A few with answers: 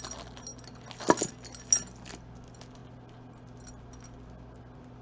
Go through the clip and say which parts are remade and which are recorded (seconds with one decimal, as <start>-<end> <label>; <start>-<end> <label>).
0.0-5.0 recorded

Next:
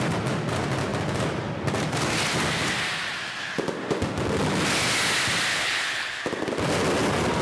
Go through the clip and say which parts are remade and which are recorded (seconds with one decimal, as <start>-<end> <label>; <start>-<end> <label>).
0.0-5.5 recorded; 5.5-6.2 remade; 6.2-7.4 recorded

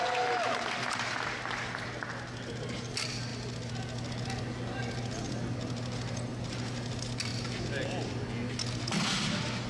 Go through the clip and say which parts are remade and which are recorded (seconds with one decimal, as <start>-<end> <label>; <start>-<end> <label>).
0.0-9.7 recorded